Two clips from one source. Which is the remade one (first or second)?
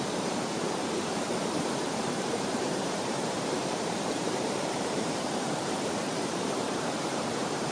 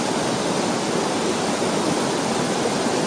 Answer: first